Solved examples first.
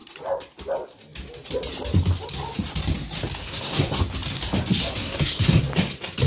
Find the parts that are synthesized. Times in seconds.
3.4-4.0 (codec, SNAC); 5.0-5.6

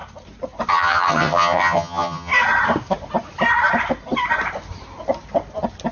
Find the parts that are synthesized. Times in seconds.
0.7-2.3 (vocoder, HiFi-GAN)

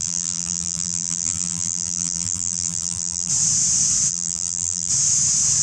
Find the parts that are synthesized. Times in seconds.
0.0-3.3 (vocoder, BigVGAN v2); 4.1-4.9

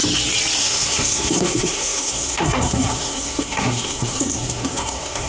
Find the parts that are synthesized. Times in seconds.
0.6-5.3 (codec, SNAC)

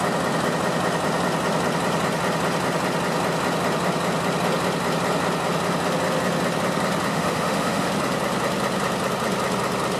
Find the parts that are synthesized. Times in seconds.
7.1-7.9 (autoencoder, DAC-VAE)

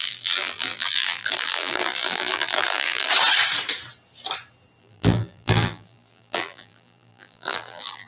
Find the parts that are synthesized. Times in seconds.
0.0-3.1 (vocoder, BigVGAN v2); 4.8-8.1

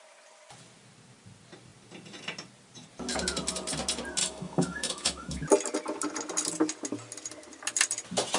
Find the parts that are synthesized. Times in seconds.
4.2-5.4 (autoencoder, DAC-VAE)